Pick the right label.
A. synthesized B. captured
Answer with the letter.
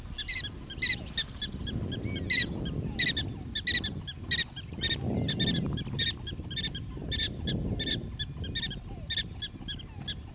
B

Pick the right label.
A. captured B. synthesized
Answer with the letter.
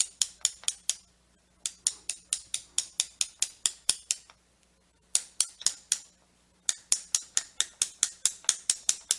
A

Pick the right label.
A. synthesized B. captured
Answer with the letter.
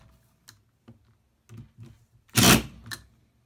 B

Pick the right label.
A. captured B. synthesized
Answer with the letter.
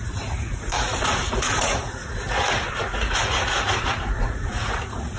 B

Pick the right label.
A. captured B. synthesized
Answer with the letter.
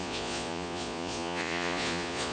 B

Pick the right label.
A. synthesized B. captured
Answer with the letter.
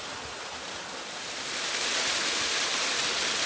B